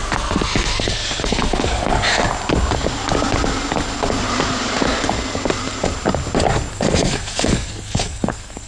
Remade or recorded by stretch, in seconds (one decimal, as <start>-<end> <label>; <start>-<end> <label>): 0.0-2.2 remade; 2.2-6.7 recorded; 6.7-8.7 remade